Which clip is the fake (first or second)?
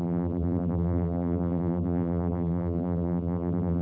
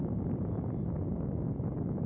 first